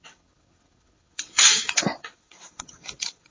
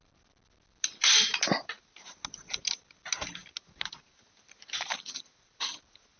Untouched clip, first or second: second